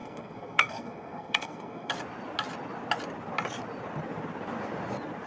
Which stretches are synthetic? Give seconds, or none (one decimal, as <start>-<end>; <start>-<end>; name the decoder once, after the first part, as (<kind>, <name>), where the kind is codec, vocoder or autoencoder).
0.0-1.9 (codec, SNAC)